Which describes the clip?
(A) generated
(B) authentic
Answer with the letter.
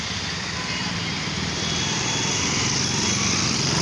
B